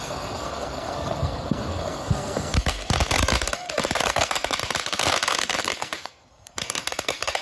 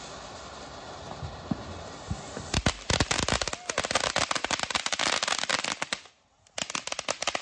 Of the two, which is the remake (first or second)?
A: first